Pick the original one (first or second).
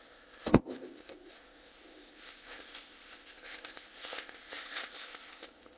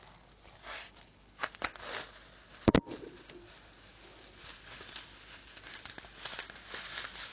second